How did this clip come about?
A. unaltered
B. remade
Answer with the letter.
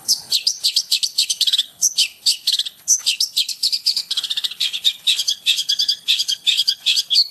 B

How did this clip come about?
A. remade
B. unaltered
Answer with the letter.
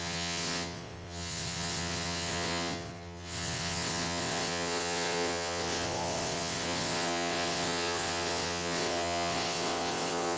A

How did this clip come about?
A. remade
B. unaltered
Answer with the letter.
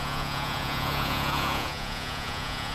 A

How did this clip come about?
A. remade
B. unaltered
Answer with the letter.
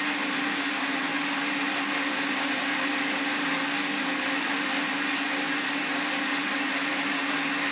B